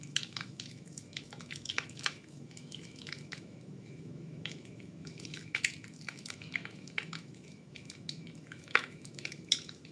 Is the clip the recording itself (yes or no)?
no